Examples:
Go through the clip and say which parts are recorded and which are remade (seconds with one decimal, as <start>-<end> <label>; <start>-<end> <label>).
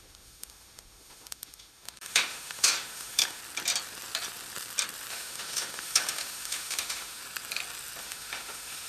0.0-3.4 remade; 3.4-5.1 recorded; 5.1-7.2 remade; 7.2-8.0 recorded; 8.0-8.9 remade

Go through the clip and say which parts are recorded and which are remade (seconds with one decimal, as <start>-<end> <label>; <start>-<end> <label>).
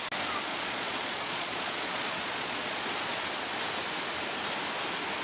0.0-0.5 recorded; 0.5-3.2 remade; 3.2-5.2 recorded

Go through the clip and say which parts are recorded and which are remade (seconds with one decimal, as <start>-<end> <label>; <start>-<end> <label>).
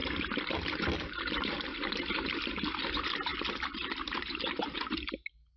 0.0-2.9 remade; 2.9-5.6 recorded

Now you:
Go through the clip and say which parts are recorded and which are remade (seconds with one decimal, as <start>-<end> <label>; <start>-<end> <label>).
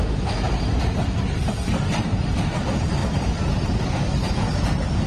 0.0-3.0 remade; 3.0-4.5 recorded; 4.5-5.1 remade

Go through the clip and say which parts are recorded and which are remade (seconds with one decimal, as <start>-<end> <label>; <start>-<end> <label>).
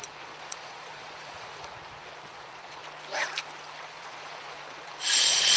0.0-1.5 remade; 1.5-2.3 recorded; 2.3-2.8 remade; 2.8-3.8 recorded; 3.8-5.6 remade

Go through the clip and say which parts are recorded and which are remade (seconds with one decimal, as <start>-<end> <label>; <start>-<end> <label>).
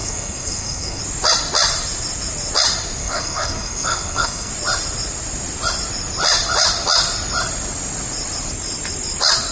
0.0-1.0 remade; 1.0-3.0 recorded; 3.0-4.5 remade; 4.5-9.5 recorded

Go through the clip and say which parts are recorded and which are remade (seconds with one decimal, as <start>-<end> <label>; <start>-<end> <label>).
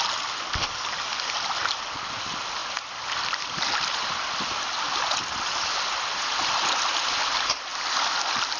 0.0-8.6 recorded